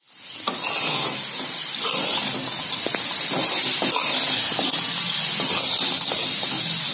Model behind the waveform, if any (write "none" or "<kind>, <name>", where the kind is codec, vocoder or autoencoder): none